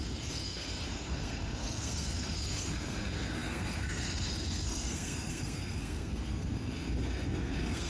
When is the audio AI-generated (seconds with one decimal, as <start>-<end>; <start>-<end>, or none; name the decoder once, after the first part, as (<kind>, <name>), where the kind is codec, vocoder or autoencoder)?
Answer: 0.0-7.9 (codec, SNAC)